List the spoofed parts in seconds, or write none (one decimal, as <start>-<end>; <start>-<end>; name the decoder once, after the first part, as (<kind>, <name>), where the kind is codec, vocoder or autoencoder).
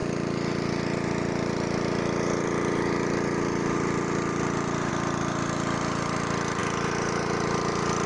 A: none